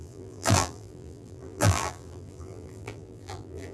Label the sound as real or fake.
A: fake